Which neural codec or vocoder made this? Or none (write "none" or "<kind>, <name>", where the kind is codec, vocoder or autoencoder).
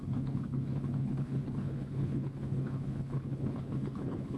codec, HILCodec